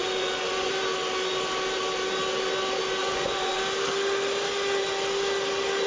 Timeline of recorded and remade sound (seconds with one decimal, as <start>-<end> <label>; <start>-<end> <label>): 0.0-0.7 remade; 0.7-3.0 recorded; 3.0-3.6 remade; 3.6-5.9 recorded